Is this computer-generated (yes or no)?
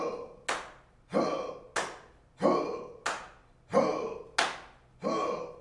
no